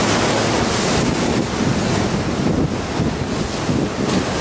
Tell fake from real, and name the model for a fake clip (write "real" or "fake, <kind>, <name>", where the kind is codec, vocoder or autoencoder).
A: real